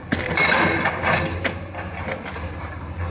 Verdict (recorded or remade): recorded